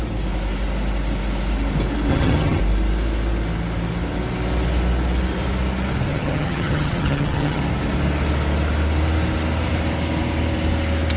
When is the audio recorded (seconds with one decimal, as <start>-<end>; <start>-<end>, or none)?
0.0-2.1; 2.6-6.1; 7.6-11.2

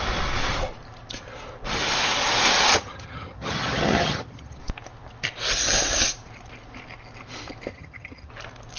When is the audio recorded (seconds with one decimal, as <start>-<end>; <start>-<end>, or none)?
0.0-2.7; 4.6-7.7; 8.3-8.8

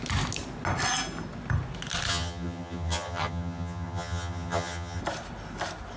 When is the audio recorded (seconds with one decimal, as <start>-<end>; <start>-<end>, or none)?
0.0-2.1; 5.0-6.0